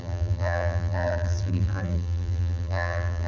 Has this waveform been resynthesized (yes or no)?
yes